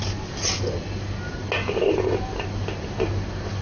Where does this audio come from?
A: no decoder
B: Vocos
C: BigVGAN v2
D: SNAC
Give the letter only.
A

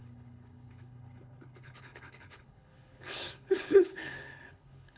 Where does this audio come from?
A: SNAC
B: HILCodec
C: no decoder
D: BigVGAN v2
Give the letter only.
B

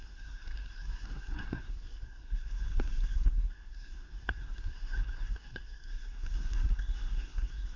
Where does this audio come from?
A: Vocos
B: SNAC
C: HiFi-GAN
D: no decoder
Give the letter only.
B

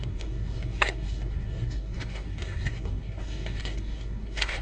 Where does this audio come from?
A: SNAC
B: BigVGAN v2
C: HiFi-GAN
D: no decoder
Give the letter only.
A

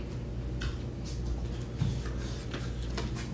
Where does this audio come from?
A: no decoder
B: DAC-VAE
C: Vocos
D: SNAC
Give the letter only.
A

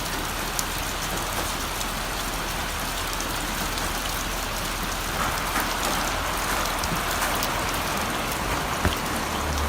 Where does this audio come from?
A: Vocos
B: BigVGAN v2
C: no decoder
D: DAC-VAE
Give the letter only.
C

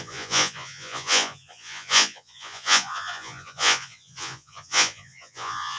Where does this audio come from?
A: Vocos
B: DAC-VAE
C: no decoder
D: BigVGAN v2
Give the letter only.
A